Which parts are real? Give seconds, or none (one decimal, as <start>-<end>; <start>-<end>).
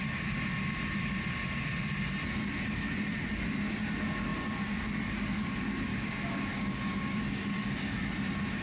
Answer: 0.0-5.9; 7.2-8.6